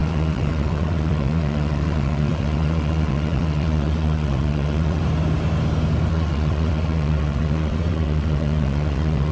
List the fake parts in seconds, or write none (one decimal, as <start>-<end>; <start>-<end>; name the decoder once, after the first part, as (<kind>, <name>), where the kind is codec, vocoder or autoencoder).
0.0-5.0 (vocoder, WaveNeXt); 6.1-9.3